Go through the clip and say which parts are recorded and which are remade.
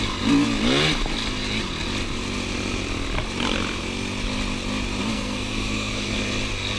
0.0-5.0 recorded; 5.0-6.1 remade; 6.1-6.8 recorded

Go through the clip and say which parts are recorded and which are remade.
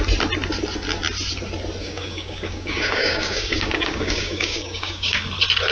0.0-1.8 recorded; 1.8-5.2 remade; 5.2-5.7 recorded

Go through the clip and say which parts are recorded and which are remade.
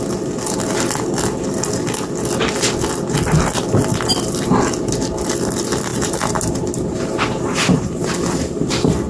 0.0-5.9 recorded; 5.9-8.7 remade; 8.7-9.1 recorded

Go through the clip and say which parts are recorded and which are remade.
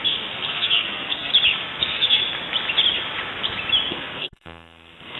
0.0-1.3 remade; 1.3-1.8 recorded; 1.8-2.2 remade; 2.2-3.9 recorded; 3.9-5.2 remade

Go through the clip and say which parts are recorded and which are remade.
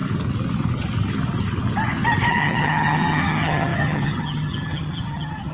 0.0-2.3 recorded; 2.3-5.5 remade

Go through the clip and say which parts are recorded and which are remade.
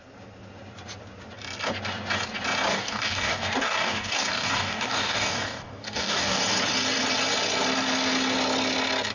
0.0-2.7 recorded; 2.7-6.4 remade; 6.4-9.1 recorded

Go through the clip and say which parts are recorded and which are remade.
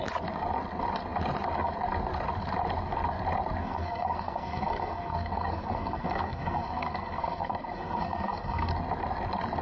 0.0-3.6 recorded; 3.6-8.7 remade; 8.7-9.6 recorded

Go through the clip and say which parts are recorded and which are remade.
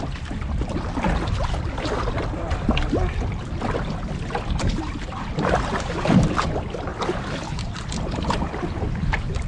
0.0-1.4 remade; 1.4-5.3 recorded; 5.3-9.5 remade